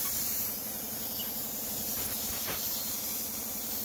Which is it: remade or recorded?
remade